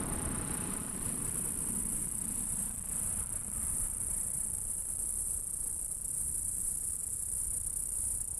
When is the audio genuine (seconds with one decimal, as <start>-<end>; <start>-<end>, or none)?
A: none